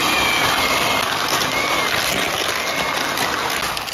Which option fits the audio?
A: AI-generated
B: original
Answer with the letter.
B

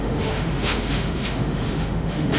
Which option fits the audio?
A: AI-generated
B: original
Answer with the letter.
A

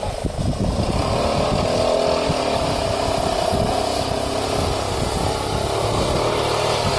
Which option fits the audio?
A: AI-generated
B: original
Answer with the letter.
B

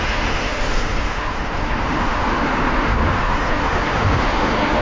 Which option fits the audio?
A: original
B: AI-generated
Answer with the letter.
B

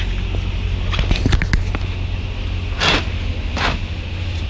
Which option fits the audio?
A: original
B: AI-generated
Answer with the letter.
A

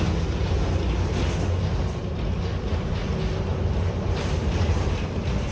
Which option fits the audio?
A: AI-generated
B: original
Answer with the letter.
B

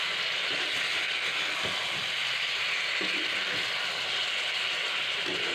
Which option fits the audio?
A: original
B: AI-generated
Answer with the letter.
A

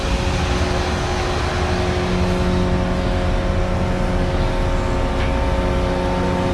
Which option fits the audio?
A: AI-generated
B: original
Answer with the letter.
B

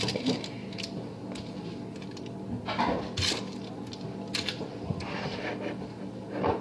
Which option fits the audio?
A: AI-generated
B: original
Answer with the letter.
B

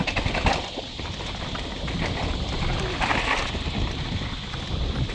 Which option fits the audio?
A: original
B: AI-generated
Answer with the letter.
A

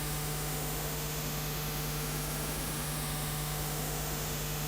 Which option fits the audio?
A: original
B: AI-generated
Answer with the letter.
B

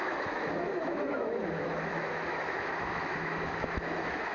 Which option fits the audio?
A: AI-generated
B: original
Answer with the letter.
A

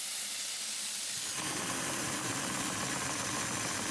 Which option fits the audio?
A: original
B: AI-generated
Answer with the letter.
A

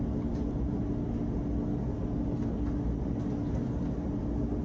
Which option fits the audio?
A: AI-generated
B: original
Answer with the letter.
B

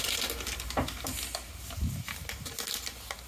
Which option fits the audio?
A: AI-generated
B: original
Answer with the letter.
B